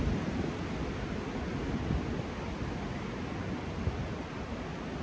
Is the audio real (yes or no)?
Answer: yes